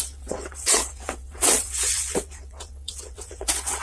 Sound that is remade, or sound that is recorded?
remade